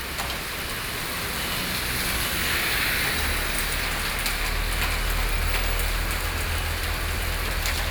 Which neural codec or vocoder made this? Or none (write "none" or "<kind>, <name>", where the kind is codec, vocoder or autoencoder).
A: none